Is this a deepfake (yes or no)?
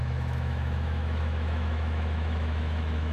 yes